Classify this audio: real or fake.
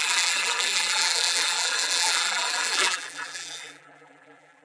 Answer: fake